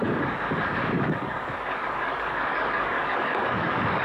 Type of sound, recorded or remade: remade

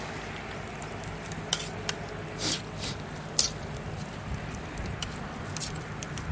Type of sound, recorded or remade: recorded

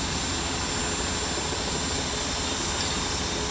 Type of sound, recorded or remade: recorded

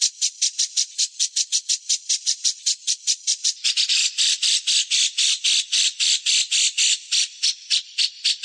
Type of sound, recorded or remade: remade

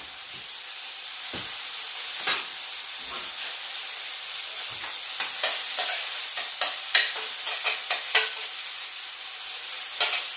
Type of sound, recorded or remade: recorded